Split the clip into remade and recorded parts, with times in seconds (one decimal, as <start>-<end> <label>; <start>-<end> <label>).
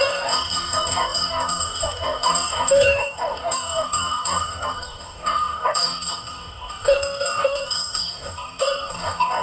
0.0-9.4 remade